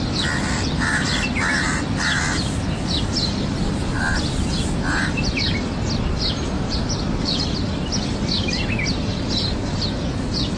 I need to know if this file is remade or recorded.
recorded